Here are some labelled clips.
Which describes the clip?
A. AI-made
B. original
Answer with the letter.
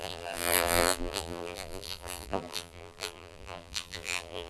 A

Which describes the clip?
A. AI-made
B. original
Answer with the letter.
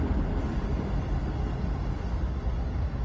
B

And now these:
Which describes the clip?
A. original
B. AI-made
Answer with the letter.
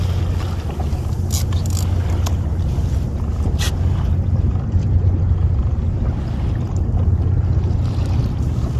A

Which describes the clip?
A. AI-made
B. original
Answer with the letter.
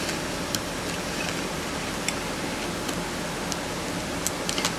B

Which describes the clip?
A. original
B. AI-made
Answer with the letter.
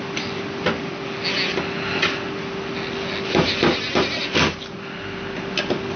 A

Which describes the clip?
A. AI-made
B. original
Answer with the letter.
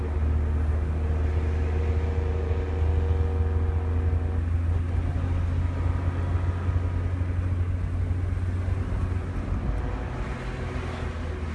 B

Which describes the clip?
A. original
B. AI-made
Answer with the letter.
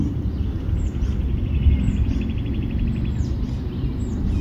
A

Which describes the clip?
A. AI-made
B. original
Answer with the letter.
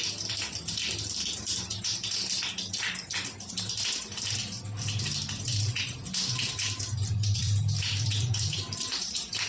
A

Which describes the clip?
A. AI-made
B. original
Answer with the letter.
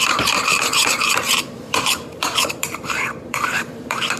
A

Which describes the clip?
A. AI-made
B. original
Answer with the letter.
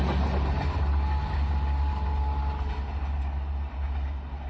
B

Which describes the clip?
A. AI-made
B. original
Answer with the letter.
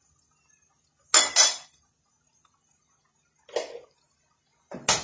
B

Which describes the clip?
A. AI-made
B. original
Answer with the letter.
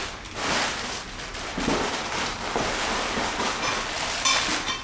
B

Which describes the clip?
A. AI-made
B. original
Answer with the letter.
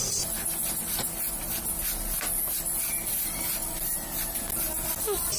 B